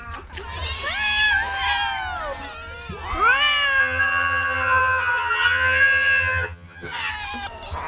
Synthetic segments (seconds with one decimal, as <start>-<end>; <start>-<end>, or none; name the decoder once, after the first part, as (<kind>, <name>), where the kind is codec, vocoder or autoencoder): 3.8-7.1 (vocoder, HiFi-GAN)